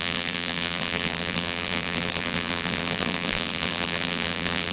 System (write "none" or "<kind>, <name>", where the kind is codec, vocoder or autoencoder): vocoder, BigVGAN v2